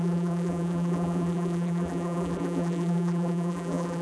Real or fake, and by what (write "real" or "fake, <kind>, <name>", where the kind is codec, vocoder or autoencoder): fake, vocoder, BigVGAN v2